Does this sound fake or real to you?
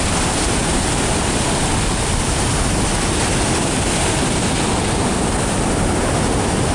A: real